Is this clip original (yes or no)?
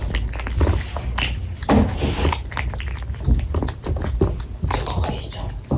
yes